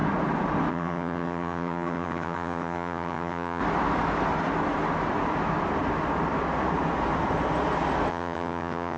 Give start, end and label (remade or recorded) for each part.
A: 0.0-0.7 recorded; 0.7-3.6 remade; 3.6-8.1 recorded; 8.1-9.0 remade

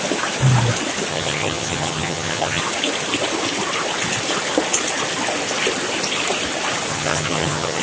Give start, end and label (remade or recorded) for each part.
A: 0.0-1.1 recorded; 1.1-2.6 remade; 2.6-6.9 recorded; 6.9-7.8 remade

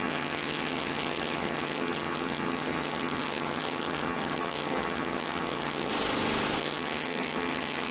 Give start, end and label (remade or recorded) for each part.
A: 0.0-5.9 remade; 5.9-6.6 recorded; 6.6-7.9 remade